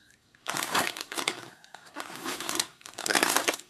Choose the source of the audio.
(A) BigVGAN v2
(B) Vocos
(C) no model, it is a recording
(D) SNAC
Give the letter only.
D